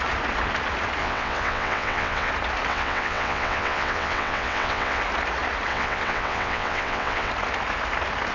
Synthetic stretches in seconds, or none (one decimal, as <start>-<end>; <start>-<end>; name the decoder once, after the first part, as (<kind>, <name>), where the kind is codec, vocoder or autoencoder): 1.0-2.3 (vocoder, WaveNeXt); 2.7-5.0; 5.7-7.3